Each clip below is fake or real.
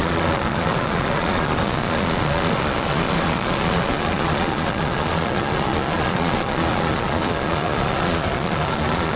fake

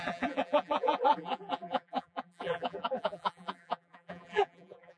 fake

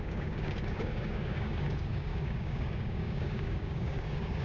fake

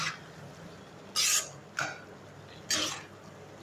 real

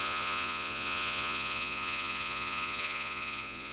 fake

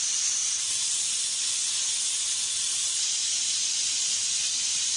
real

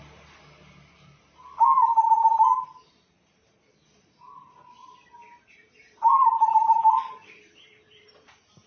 fake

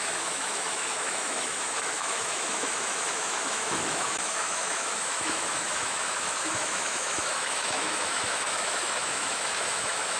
fake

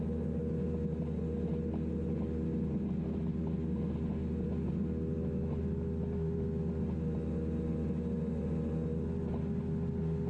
real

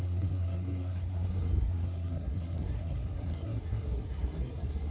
fake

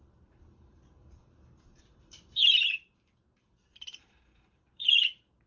fake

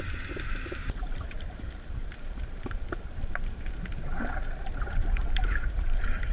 fake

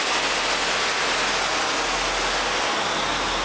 real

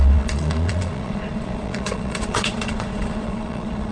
fake